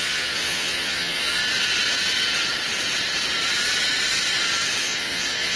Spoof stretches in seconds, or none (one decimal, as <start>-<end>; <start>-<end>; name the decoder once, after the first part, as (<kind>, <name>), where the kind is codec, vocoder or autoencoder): 0.0-1.4 (vocoder, Vocos); 4.8-5.6